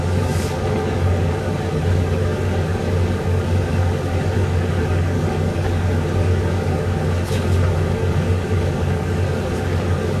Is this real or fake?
fake